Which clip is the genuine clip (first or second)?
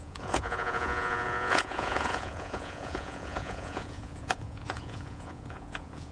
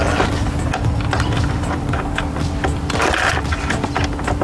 second